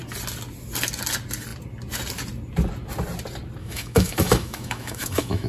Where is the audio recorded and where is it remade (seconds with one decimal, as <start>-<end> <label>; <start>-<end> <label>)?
0.0-3.6 recorded; 3.6-5.5 remade